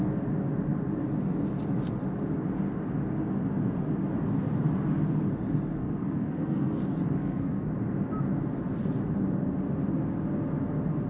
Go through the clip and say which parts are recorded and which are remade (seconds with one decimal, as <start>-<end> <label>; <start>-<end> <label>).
0.0-5.8 recorded; 5.8-6.8 remade; 6.8-7.2 recorded; 7.2-7.7 remade; 7.7-11.1 recorded